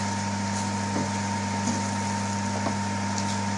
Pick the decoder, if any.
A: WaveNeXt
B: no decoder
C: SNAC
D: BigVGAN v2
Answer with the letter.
B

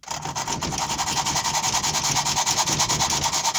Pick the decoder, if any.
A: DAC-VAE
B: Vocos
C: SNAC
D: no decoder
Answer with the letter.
D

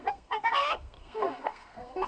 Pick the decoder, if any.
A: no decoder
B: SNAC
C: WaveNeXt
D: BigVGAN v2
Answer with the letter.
B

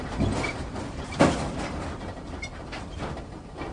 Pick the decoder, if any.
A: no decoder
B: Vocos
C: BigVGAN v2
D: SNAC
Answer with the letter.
A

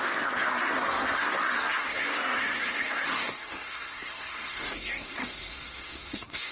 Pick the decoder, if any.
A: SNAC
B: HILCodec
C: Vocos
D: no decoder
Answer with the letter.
A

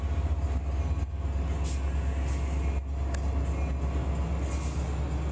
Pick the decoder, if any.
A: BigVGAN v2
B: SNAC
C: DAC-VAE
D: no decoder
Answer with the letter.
D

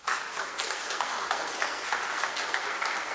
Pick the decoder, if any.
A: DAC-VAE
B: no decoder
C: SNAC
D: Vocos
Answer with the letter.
C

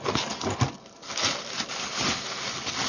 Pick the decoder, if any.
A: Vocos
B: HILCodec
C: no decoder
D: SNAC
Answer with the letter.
C